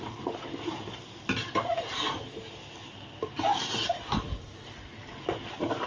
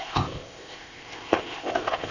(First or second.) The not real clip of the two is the second